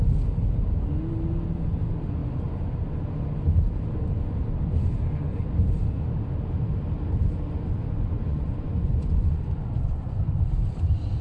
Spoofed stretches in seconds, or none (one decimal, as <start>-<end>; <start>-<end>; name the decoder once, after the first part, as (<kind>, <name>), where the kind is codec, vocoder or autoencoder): 8.3-10.2 (vocoder, Vocos)